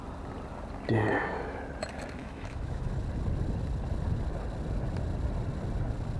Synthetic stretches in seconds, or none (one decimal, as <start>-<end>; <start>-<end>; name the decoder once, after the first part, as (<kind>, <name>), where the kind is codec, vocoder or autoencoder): 2.2-2.9 (autoencoder, DAC-VAE)